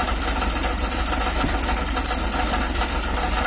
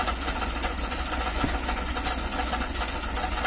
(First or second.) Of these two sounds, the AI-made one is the second